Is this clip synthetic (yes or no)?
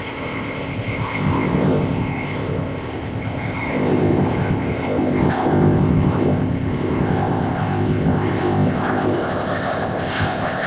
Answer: yes